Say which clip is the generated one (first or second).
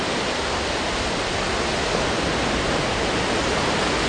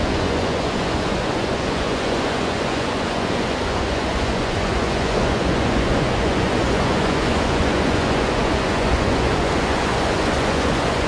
second